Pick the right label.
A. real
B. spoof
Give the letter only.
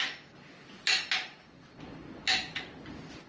A